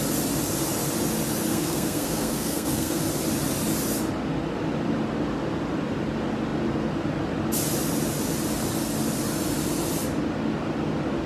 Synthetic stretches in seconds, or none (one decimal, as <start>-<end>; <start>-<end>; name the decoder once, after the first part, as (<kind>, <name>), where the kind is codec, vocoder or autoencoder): 1.5-3.0 (codec, SNAC)